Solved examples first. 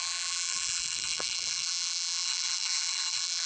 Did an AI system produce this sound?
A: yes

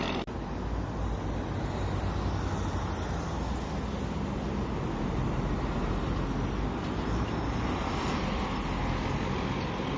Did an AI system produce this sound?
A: no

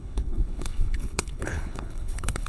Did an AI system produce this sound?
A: yes